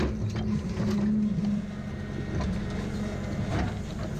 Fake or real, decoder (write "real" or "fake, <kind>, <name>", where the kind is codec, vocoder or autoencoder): real